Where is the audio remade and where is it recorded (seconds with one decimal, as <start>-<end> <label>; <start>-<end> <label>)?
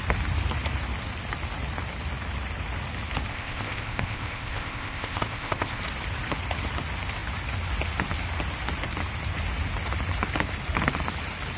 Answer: 0.0-3.3 recorded; 3.3-5.8 remade; 5.8-11.6 recorded